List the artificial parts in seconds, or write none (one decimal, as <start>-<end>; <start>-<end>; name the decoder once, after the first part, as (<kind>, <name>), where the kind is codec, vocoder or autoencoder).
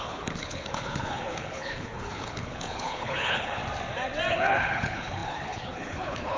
0.0-3.6 (codec, HILCodec); 4.3-6.4